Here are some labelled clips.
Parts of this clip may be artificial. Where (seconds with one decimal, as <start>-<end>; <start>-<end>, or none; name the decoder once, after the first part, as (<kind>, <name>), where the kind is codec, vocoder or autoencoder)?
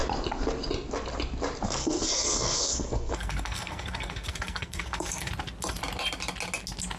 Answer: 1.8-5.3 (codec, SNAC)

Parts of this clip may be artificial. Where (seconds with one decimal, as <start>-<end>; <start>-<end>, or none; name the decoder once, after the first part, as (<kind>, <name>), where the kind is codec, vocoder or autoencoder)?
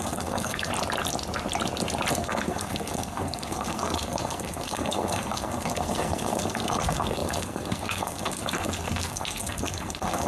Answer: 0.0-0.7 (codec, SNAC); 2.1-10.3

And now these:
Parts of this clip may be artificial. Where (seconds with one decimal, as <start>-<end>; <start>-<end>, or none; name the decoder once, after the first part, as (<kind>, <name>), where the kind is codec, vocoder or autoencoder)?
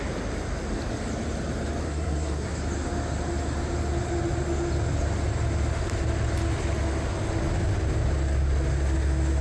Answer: 1.8-2.6 (codec, SNAC)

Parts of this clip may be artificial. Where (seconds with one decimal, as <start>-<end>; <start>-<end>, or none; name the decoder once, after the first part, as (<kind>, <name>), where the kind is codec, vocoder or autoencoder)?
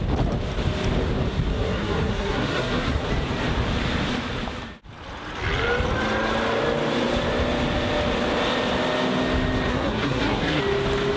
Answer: 1.5-3.1 (codec, SNAC); 9.7-10.6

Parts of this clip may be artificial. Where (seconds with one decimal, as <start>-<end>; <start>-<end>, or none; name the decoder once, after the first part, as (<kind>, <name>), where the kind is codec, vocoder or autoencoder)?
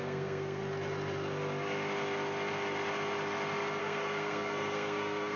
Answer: 0.0-0.6 (codec, SNAC); 3.8-5.4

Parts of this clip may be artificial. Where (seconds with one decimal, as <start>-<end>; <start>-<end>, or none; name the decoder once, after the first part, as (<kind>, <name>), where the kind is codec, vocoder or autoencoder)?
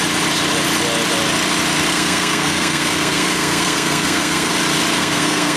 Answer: 1.9-4.5 (codec, SNAC); 5.0-5.6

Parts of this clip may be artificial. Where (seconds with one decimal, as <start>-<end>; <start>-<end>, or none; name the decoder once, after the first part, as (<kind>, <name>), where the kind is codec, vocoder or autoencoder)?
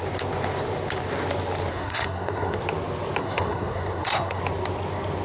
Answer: 1.7-2.6 (codec, SNAC); 3.2-4.4